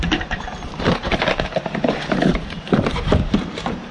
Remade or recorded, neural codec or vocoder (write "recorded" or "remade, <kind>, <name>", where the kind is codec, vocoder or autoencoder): remade, vocoder, BigVGAN v2